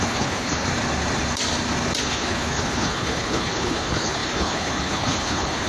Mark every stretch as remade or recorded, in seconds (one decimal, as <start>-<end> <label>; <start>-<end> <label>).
0.0-0.7 remade; 0.7-2.0 recorded; 2.0-5.7 remade